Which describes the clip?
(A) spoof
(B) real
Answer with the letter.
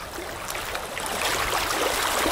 B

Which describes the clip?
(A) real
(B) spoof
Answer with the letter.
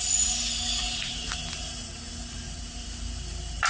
A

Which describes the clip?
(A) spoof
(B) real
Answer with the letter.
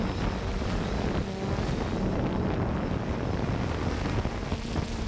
B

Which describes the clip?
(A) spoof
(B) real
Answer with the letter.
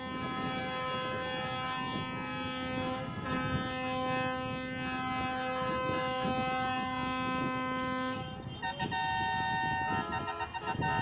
B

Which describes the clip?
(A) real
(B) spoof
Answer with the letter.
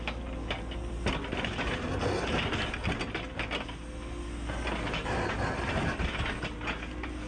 A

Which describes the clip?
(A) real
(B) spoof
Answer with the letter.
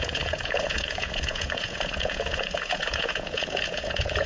B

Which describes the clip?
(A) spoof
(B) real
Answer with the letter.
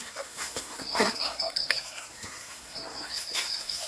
A